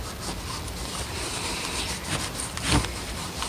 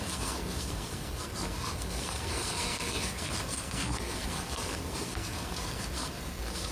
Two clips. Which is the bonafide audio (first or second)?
first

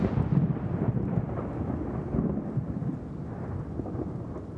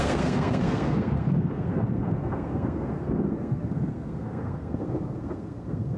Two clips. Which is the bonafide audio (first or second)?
first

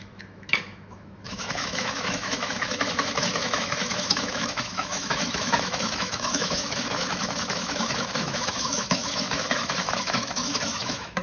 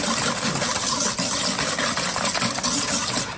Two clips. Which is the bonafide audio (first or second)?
second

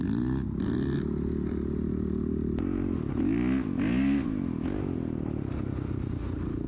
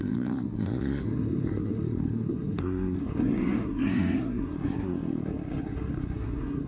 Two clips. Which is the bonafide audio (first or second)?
first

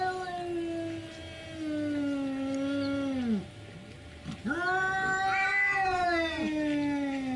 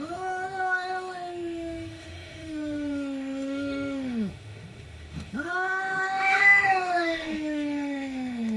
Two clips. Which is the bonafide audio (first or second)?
first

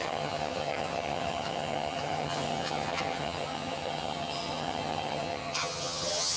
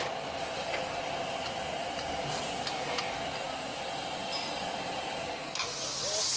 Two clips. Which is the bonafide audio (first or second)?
second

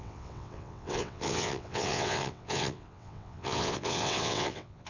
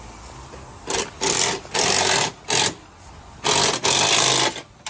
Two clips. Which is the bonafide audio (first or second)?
second